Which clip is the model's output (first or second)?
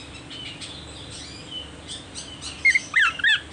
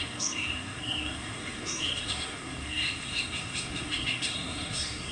second